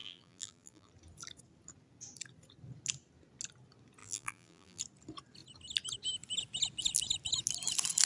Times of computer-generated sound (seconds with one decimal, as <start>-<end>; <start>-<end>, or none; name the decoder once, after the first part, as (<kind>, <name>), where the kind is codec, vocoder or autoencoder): 0.0-0.9 (vocoder, BigVGAN v2); 4.0-4.8